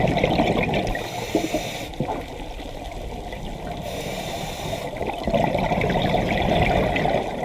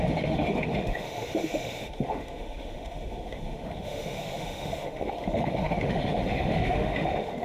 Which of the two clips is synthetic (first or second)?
second